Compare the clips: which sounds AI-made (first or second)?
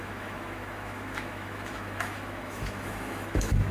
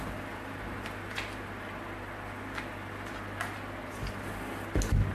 first